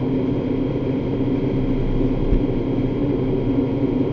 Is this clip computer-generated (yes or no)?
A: no